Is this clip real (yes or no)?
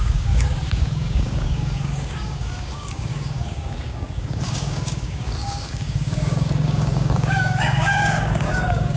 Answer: no